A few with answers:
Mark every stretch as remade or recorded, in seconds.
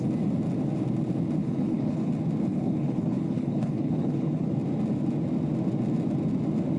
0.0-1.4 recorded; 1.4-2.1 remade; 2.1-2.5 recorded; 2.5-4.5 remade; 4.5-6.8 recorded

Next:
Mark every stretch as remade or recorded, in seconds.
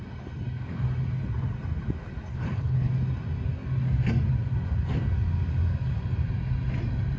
0.0-2.3 recorded; 2.3-2.9 remade; 2.9-7.2 recorded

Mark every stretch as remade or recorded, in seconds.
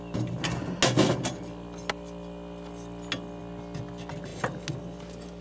0.0-5.4 recorded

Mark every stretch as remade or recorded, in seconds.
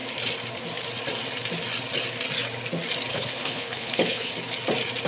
0.0-3.1 recorded; 3.1-4.3 remade; 4.3-5.1 recorded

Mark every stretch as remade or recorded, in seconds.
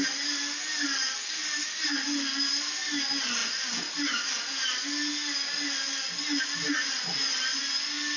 0.0-8.2 recorded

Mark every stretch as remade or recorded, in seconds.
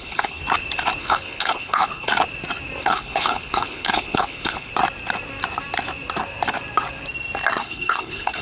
0.0-0.4 remade; 0.4-1.0 recorded; 1.0-2.1 remade; 2.1-2.8 recorded; 2.8-4.7 remade; 4.7-7.6 recorded; 7.6-8.4 remade